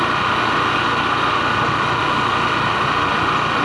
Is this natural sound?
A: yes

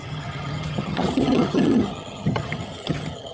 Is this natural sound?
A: no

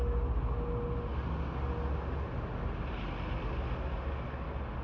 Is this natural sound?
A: yes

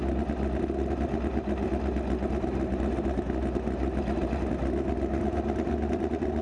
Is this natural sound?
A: yes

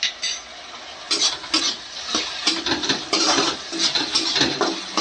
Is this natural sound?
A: yes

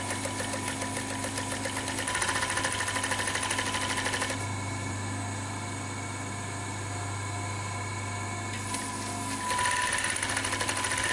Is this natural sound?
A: yes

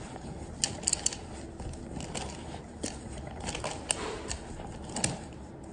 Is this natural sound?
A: yes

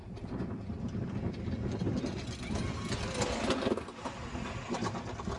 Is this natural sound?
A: yes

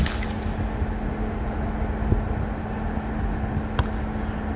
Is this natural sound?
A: yes